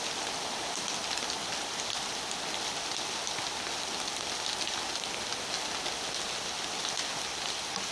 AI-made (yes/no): no